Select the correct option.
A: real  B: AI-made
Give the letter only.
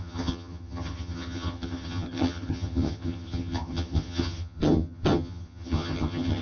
B